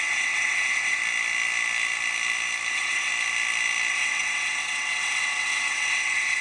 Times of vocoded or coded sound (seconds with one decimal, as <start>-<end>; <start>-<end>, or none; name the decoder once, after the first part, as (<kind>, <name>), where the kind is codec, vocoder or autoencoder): 0.0-1.0 (vocoder, WaveNeXt); 2.7-3.1; 3.9-6.4